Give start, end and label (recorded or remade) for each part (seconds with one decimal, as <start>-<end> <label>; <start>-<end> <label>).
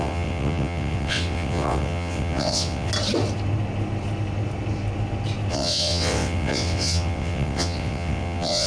0.0-2.9 remade; 2.9-5.5 recorded; 5.5-8.7 remade